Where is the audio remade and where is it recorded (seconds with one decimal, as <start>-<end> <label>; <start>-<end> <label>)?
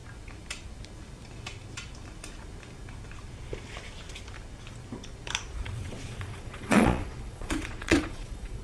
0.0-5.5 recorded; 5.5-8.6 remade